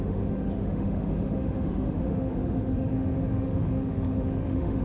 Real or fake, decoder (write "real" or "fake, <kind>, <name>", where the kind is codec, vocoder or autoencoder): fake, autoencoder, DAC-VAE